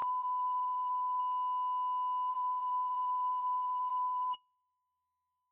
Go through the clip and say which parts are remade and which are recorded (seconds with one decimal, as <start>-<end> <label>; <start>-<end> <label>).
0.0-1.2 remade; 1.2-2.3 recorded; 2.3-5.5 remade